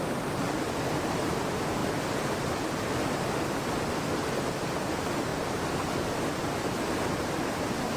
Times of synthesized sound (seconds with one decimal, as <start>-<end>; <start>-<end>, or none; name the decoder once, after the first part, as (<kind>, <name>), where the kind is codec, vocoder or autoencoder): 5.3-7.3 (vocoder, BigVGAN v2)